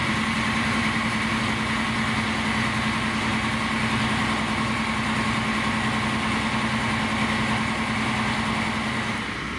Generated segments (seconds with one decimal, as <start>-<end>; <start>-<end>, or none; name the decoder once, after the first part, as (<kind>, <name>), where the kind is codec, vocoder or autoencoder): 0.0-1.4 (vocoder, BigVGAN v2)